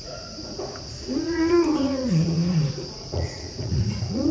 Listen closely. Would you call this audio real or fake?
fake